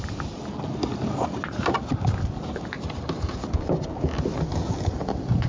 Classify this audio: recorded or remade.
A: recorded